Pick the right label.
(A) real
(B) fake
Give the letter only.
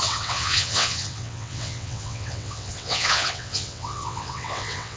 B